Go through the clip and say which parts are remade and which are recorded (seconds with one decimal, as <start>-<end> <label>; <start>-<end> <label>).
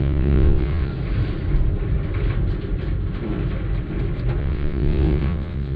0.0-0.9 remade; 0.9-4.4 recorded; 4.4-5.8 remade